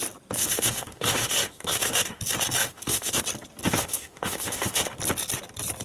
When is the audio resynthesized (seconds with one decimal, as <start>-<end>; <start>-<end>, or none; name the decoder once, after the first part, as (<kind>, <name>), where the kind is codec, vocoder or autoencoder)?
0.4-2.2 (autoencoder, DAC-VAE); 2.6-3.2; 3.6-5.0